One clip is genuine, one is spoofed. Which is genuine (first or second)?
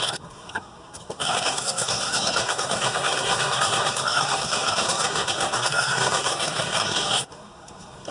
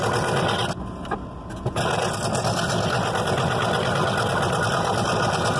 second